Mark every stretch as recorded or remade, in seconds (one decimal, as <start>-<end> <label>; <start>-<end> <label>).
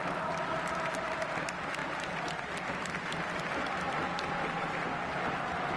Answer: 0.0-5.8 recorded